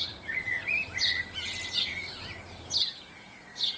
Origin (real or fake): real